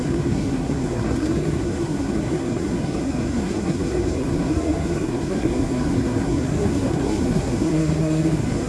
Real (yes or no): no